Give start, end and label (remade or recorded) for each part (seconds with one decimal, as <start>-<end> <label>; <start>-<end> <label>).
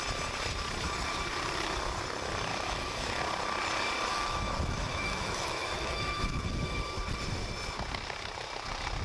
0.0-2.5 recorded; 2.5-3.2 remade; 3.2-4.1 recorded; 4.1-6.5 remade; 6.5-9.0 recorded